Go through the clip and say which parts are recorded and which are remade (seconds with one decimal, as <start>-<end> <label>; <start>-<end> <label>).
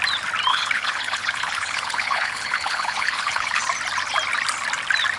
0.0-0.5 recorded; 0.5-3.6 remade; 3.6-5.2 recorded